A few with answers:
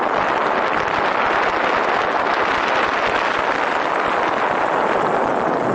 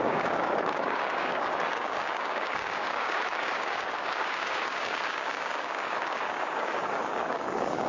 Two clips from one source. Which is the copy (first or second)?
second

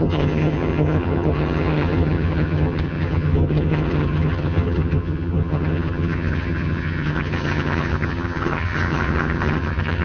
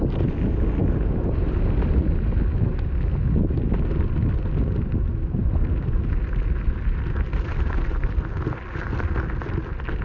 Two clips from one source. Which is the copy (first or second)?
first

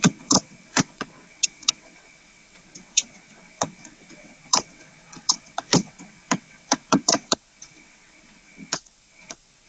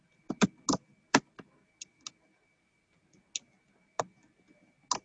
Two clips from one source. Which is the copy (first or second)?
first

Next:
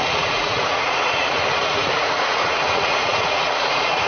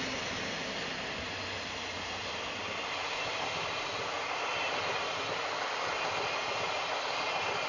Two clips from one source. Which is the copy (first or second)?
first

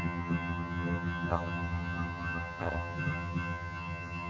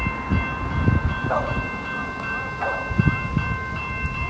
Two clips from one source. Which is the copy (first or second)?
first